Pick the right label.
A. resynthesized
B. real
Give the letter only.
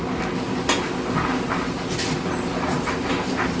B